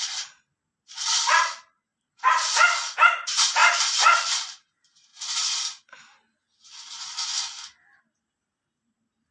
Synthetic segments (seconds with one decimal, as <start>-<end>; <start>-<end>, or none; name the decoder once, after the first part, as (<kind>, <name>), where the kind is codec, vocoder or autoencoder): 0.0-5.1 (vocoder, BigVGAN v2); 8.0-9.3